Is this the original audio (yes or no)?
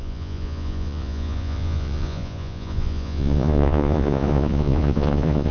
no